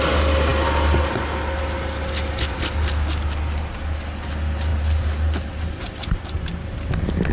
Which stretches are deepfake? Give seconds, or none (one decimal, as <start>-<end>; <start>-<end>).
none